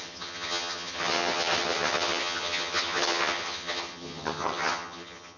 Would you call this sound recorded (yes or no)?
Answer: no